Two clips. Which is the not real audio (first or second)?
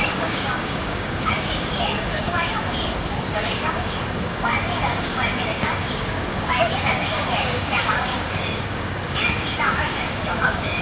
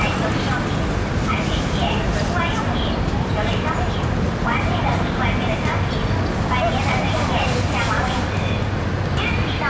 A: first